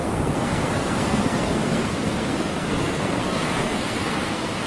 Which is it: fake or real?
fake